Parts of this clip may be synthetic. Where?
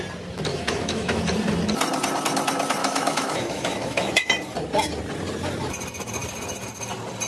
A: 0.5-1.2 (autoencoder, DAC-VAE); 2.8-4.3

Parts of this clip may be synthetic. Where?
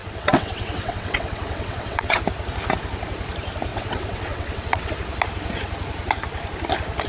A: 0.0-2.2 (vocoder, WaveNeXt); 3.7-4.9